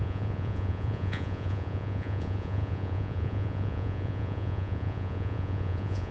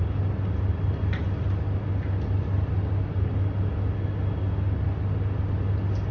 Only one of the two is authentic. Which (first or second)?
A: second